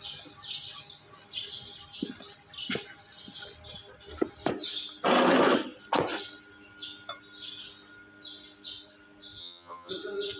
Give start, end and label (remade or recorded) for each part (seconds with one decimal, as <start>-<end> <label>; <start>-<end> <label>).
0.0-9.4 recorded; 9.4-9.9 remade; 9.9-10.4 recorded